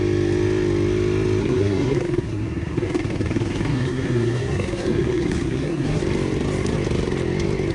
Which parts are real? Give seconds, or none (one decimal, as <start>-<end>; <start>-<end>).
0.0-1.4; 6.0-7.7